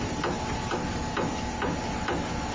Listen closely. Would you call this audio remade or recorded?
recorded